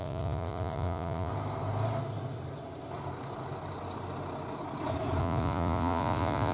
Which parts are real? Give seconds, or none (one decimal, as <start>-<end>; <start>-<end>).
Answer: 1.3-5.2